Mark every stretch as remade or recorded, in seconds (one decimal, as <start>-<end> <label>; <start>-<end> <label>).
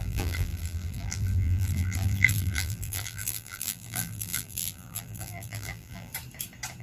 0.0-6.1 remade; 6.1-6.8 recorded